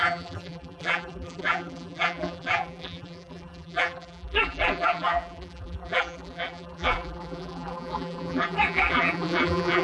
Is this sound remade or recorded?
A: remade